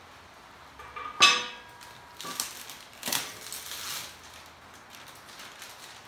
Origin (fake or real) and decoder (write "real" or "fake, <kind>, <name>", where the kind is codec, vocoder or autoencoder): real